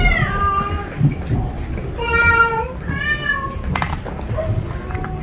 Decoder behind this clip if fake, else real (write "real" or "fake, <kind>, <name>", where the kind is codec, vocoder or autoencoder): real